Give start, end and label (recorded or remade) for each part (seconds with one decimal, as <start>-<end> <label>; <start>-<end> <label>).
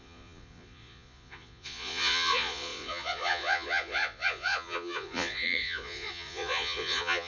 0.0-7.3 remade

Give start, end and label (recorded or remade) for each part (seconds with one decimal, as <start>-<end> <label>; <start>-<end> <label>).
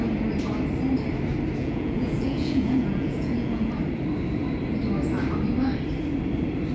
0.0-1.6 recorded; 1.6-3.7 remade; 3.7-6.7 recorded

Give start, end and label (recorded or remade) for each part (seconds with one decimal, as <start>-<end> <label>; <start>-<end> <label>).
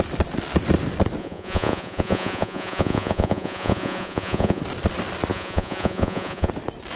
0.0-1.2 recorded; 1.2-4.6 remade; 4.6-5.3 recorded; 5.3-6.5 remade; 6.5-7.0 recorded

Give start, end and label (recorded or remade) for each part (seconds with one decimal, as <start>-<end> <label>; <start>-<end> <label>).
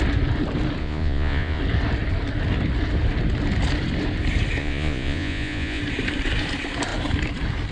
0.0-0.8 recorded; 0.8-1.6 remade; 1.6-4.6 recorded; 4.6-5.8 remade; 5.8-7.7 recorded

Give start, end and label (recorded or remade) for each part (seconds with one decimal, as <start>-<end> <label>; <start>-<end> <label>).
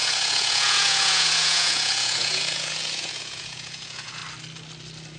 0.0-4.2 remade; 4.2-5.2 recorded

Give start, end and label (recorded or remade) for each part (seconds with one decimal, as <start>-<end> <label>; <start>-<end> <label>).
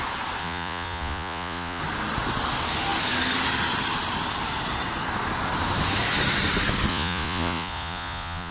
0.0-0.4 recorded; 0.4-1.8 remade; 1.8-6.9 recorded; 6.9-8.5 remade